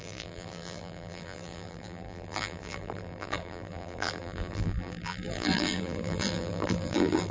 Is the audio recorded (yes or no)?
no